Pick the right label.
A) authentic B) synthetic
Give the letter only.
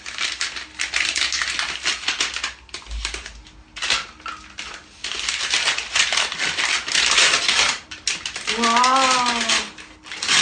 A